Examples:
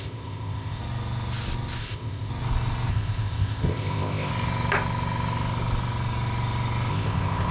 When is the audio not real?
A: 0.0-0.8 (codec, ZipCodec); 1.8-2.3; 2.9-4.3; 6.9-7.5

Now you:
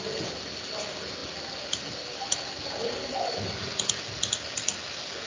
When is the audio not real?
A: none

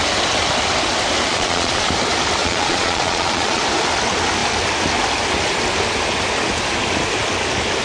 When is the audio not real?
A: 1.3-1.9 (vocoder, Vocos); 2.4-3.6

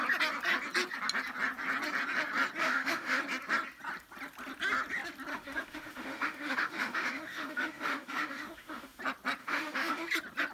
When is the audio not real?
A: 2.6-3.2 (autoencoder, DAC-VAE); 5.3-9.0; 9.4-10.1

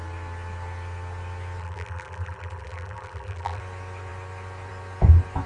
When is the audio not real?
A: 1.6-3.6 (vocoder, BigVGAN v2)

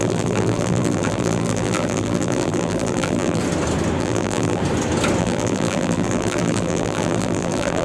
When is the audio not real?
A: 0.0-3.4 (vocoder, BigVGAN v2); 4.0-4.6; 5.2-7.8